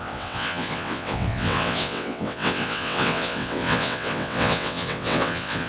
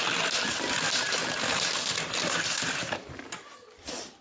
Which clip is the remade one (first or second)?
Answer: first